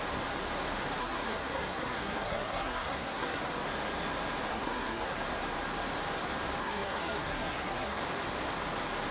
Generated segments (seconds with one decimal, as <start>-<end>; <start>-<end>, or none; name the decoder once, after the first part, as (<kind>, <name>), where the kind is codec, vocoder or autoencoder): 1.0-3.4 (codec, SNAC); 4.5-5.2; 6.6-8.0